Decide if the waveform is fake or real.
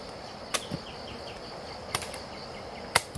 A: real